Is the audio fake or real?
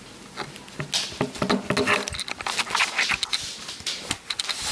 real